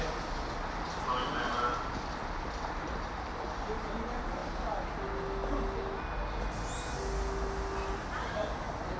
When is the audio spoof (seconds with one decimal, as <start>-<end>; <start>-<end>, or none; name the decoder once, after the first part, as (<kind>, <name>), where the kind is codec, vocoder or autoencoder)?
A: none